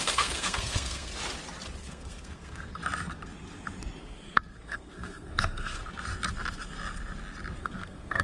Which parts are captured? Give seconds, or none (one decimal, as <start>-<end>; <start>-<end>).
1.1-1.8; 2.8-4.0; 5.8-7.6